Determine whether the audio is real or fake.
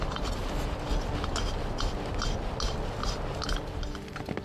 real